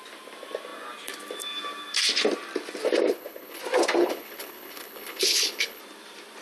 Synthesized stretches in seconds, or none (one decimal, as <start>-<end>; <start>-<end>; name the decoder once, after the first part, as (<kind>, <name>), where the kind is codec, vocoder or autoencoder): 3.1-3.6 (codec, HILCodec); 4.0-5.8